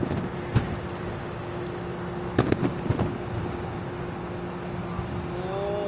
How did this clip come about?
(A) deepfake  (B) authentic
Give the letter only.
B